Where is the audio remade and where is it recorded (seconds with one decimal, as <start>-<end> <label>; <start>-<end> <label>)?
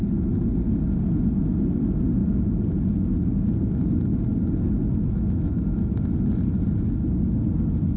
0.0-8.0 recorded